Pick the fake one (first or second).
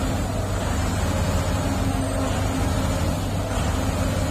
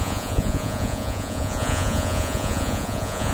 second